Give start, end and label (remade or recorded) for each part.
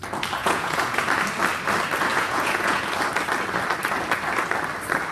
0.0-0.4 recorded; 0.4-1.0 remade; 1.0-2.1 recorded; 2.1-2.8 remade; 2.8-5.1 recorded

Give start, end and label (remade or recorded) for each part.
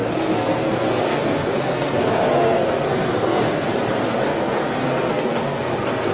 0.0-3.7 remade; 3.7-4.3 recorded; 4.3-6.1 remade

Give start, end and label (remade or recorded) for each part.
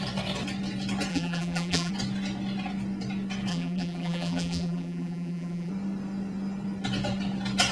0.0-1.1 recorded; 1.1-1.9 remade; 1.9-3.5 recorded; 3.5-5.7 remade; 5.7-7.7 recorded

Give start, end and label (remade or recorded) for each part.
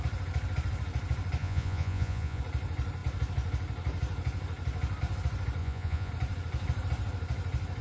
0.0-1.4 recorded; 1.4-2.4 remade; 2.4-5.6 recorded; 5.6-6.1 remade; 6.1-7.8 recorded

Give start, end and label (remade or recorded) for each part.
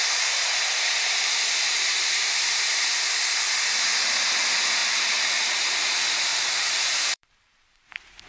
0.0-2.9 remade; 2.9-4.8 recorded; 4.8-5.7 remade; 5.7-6.3 recorded; 6.3-8.3 remade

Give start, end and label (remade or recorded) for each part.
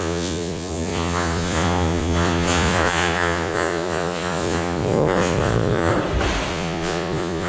0.0-5.9 remade; 5.9-6.5 recorded; 6.5-7.5 remade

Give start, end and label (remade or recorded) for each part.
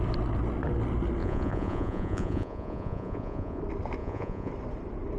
0.0-1.2 recorded; 1.2-3.6 remade; 3.6-4.0 recorded; 4.0-4.5 remade; 4.5-5.2 recorded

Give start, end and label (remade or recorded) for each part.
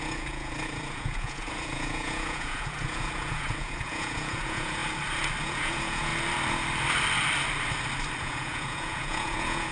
0.0-4.8 remade; 4.8-5.4 recorded; 5.4-6.1 remade; 6.1-8.2 recorded; 8.2-9.7 remade